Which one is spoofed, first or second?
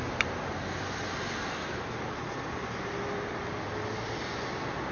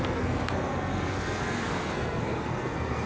second